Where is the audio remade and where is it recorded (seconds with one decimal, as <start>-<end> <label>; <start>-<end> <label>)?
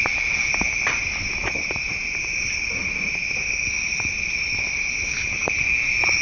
0.0-6.2 recorded